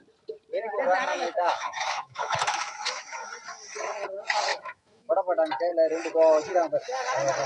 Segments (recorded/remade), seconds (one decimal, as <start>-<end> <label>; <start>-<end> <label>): 0.0-1.1 recorded; 1.1-3.3 remade; 3.3-4.5 recorded; 4.5-5.1 remade; 5.1-7.5 recorded